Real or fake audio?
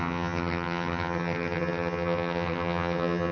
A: fake